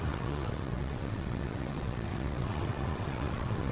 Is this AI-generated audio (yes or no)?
yes